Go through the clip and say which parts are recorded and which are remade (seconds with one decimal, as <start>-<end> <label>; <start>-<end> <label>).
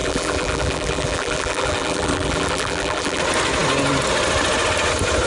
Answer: 0.0-3.2 remade; 3.2-5.3 recorded